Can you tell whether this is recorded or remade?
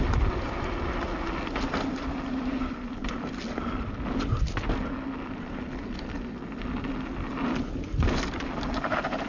recorded